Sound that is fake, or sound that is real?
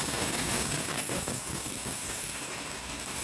fake